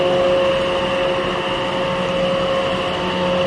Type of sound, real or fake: real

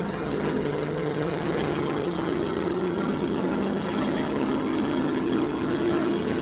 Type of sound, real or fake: fake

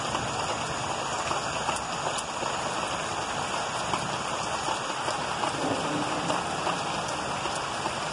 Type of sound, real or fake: real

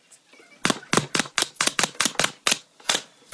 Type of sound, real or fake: real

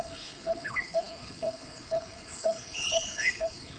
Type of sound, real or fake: fake